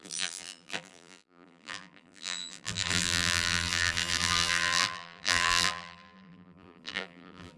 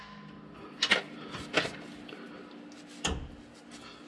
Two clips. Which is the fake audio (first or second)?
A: first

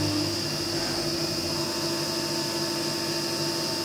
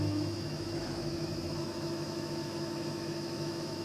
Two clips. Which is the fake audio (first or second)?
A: second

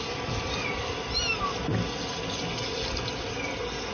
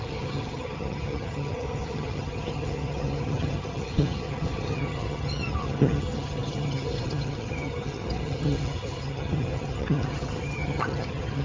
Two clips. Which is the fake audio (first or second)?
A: second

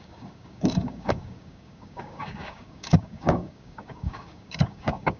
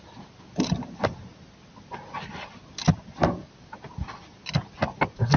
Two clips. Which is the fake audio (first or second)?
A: first